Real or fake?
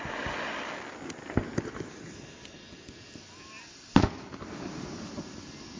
real